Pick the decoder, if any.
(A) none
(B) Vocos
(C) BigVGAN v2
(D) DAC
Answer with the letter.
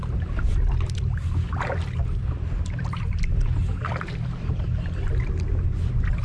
A